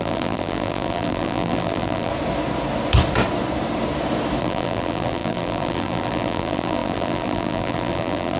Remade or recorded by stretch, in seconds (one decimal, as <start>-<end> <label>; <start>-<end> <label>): 0.0-2.1 remade; 2.1-4.4 recorded; 4.4-8.4 remade